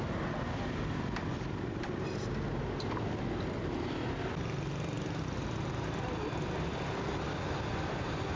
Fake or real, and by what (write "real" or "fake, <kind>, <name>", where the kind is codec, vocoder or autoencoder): real